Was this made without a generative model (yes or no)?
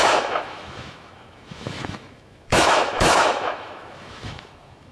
no